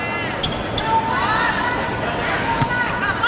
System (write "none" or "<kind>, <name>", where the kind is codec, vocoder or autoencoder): none